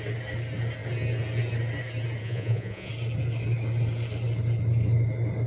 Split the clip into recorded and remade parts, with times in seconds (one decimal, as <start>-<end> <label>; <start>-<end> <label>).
0.0-2.2 recorded; 2.2-2.9 remade; 2.9-5.5 recorded